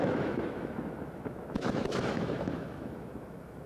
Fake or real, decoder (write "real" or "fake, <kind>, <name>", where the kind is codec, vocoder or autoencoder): fake, autoencoder, DAC-VAE